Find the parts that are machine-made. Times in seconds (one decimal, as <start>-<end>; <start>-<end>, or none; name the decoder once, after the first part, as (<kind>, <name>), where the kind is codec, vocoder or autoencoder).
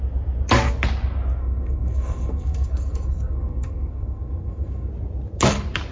1.4-4.9 (codec, SNAC)